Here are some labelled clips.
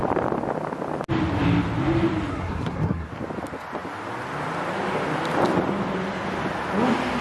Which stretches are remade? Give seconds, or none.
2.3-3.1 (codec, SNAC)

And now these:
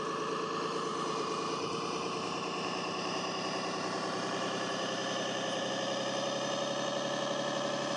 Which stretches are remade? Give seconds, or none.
0.9-5.7 (vocoder, BigVGAN v2)

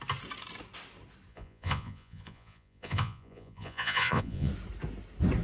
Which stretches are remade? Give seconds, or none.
1.3-4.5 (vocoder, Vocos)

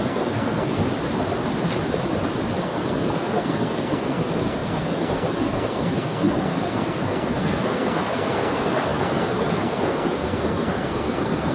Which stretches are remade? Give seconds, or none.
0.0-0.8 (codec, SNAC); 2.6-11.5